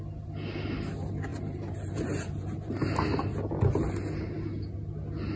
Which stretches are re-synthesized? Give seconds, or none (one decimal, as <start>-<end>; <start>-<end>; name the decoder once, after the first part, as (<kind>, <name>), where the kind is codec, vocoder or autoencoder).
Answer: 1.3-2.7 (vocoder, BigVGAN v2)